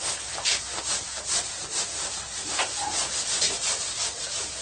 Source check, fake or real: real